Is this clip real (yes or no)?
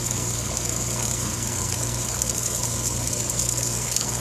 no